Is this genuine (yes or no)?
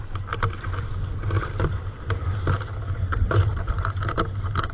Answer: yes